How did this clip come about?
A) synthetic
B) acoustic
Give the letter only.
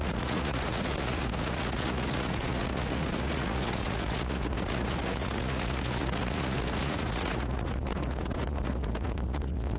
A